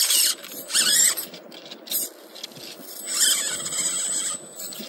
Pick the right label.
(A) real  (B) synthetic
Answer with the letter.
A